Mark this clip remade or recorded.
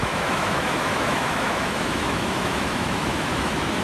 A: remade